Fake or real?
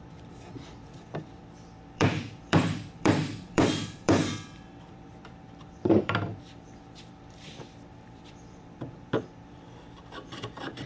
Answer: fake